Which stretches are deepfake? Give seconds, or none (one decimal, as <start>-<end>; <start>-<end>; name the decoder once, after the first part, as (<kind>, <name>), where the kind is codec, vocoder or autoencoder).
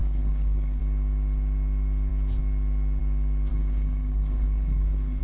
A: 0.0-0.8 (codec, HILCodec); 3.5-5.2